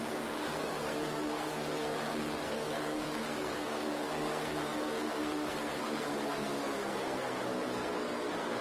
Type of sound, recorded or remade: remade